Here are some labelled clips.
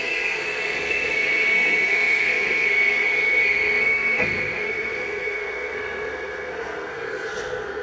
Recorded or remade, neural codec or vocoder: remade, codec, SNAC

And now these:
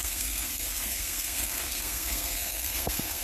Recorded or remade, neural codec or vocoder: remade, codec, SNAC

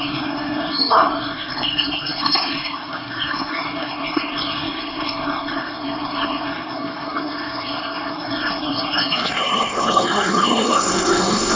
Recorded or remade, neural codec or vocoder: remade, codec, SNAC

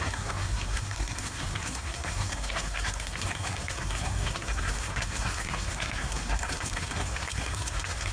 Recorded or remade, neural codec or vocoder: remade, codec, SNAC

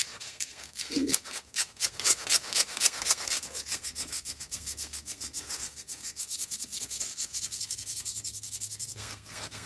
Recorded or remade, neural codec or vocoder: remade, codec, SNAC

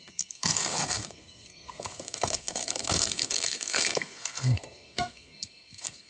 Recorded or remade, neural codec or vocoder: remade, codec, SNAC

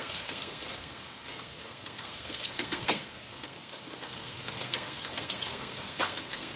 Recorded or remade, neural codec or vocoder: remade, codec, SNAC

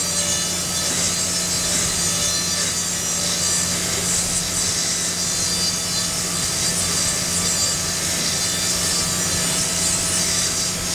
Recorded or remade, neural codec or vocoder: recorded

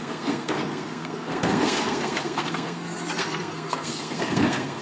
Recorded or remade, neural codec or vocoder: remade, codec, SNAC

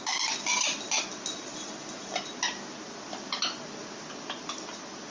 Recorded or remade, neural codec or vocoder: recorded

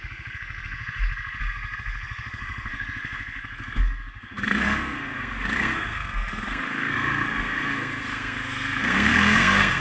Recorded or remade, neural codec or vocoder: remade, codec, SNAC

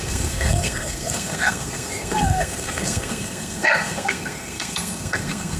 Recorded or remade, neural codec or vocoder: remade, codec, SNAC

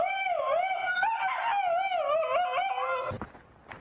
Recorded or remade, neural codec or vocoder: recorded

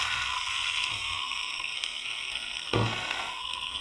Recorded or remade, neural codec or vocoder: remade, codec, SNAC